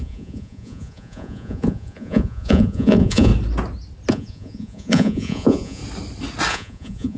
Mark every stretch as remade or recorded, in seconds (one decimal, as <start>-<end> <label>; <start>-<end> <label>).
0.0-3.3 remade; 3.3-4.1 recorded; 4.1-5.8 remade; 5.8-6.5 recorded; 6.5-7.2 remade